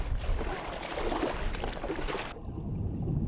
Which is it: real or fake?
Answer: real